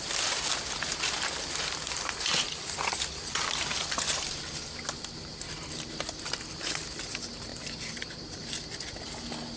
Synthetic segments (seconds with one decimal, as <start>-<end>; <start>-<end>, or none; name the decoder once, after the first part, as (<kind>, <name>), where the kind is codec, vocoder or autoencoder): 7.5-8.5 (vocoder, BigVGAN v2)